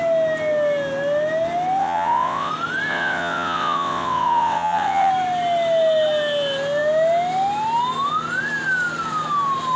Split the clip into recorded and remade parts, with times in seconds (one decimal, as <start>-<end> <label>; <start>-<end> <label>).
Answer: 0.0-1.8 recorded; 1.8-2.5 remade; 2.5-2.9 recorded; 2.9-5.1 remade; 5.1-9.8 recorded